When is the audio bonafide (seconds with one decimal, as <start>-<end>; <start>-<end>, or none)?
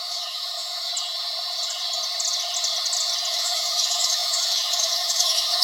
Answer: 0.9-3.3